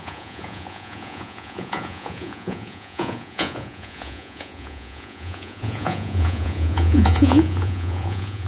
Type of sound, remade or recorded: remade